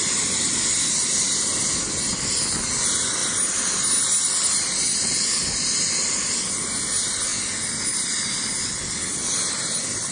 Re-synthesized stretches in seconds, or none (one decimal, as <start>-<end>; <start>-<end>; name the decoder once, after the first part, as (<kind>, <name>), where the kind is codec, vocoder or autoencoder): none